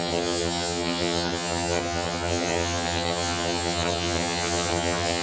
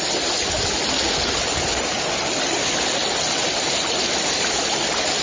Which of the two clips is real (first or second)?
second